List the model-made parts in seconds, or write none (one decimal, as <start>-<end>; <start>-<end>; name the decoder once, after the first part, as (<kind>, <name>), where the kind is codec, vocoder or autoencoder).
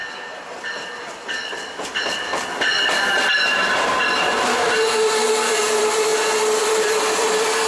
0.0-6.1 (vocoder, BigVGAN v2); 6.6-7.7